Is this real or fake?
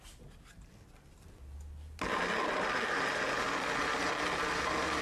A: real